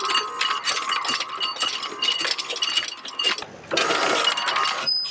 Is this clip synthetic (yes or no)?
no